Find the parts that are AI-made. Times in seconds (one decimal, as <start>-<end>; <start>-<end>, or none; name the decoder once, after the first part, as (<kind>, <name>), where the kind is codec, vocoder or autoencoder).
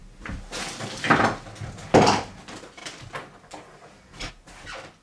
none